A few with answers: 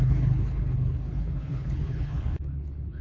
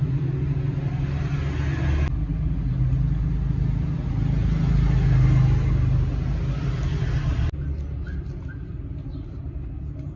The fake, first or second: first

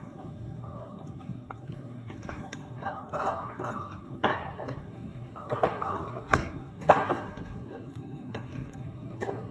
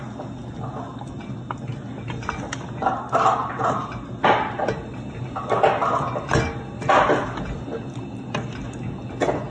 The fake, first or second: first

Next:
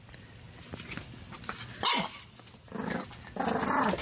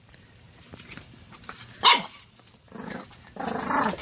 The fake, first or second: second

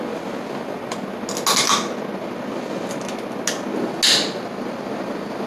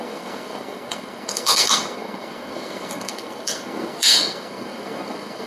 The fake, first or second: second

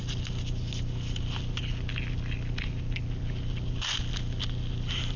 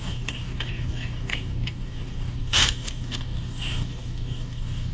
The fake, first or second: second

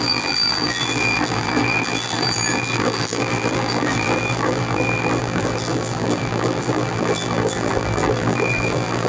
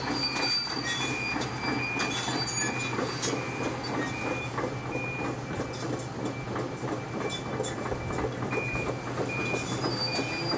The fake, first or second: first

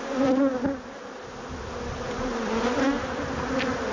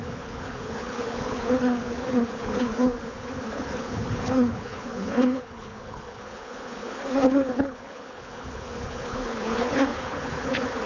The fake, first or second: second